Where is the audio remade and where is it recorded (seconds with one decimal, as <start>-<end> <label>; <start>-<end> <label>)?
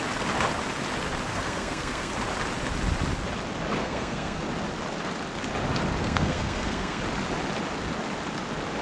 0.0-1.3 recorded; 1.3-2.1 remade; 2.1-3.8 recorded; 3.8-4.4 remade; 4.4-6.0 recorded; 6.0-7.0 remade; 7.0-8.8 recorded